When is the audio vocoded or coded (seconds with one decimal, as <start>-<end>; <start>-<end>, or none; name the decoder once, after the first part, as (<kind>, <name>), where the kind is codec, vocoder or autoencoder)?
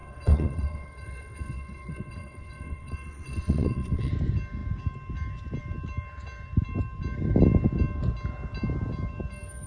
0.0-4.1 (vocoder, WaveNeXt)